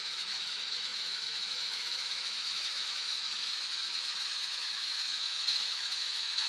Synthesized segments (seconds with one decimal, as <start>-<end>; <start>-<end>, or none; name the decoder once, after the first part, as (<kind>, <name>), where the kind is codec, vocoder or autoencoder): 0.0-6.5 (autoencoder, DAC-VAE)